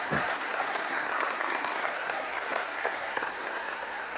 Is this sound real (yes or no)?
no